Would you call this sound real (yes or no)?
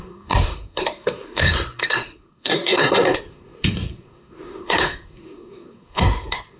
no